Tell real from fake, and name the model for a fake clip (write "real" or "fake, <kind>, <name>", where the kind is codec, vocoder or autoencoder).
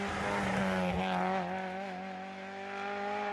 real